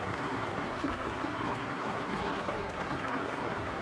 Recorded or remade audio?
remade